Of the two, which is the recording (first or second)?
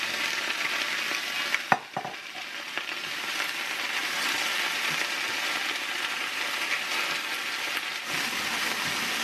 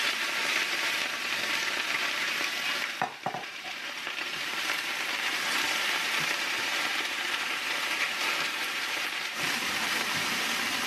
first